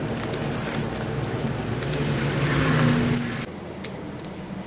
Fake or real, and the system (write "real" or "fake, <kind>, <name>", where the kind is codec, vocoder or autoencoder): real